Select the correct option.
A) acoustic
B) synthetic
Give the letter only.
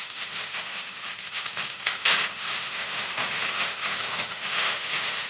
B